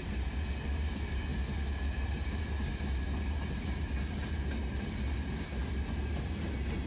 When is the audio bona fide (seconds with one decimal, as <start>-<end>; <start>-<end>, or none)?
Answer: 0.0-6.9